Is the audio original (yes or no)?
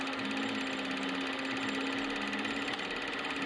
yes